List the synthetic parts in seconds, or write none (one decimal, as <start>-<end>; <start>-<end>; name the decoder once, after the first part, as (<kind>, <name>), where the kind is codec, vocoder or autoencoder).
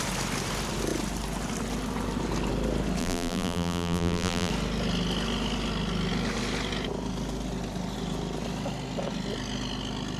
3.0-4.5 (vocoder, BigVGAN v2)